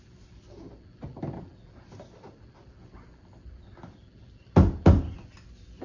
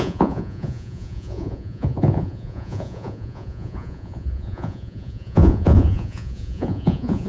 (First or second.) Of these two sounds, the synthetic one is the second